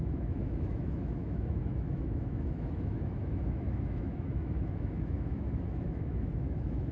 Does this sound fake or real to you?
fake